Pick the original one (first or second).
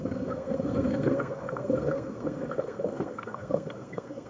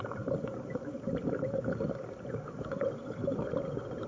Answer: second